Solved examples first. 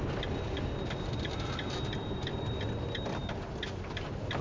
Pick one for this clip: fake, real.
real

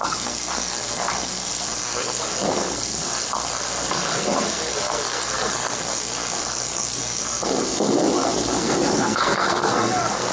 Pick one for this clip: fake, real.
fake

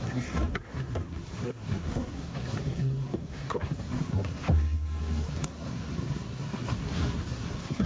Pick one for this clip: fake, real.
fake